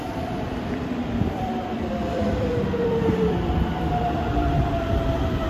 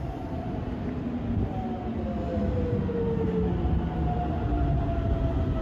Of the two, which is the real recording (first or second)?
second